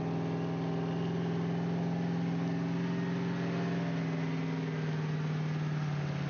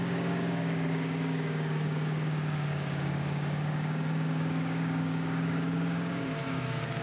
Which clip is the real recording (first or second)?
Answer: first